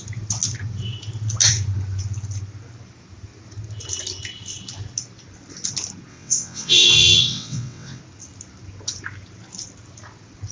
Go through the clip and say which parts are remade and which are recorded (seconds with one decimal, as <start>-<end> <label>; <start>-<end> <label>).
0.0-6.1 recorded; 6.1-8.0 remade; 8.0-10.5 recorded